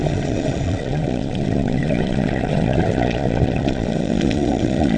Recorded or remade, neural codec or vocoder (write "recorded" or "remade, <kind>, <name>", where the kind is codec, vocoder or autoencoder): remade, vocoder, Vocos